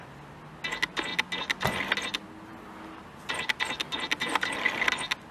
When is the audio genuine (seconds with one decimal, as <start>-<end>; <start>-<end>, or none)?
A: 0.0-5.3